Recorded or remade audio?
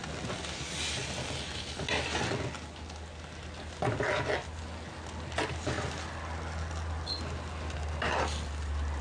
recorded